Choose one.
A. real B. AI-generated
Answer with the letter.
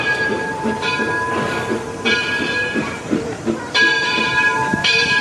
B